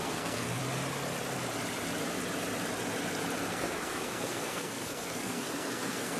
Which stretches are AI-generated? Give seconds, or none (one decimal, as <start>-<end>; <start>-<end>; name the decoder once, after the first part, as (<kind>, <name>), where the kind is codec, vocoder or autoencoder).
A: 0.0-0.6 (codec, SNAC); 3.5-6.2